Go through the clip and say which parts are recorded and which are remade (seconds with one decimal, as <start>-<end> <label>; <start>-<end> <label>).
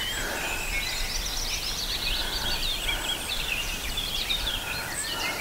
0.0-2.2 recorded; 2.2-4.5 remade; 4.5-5.4 recorded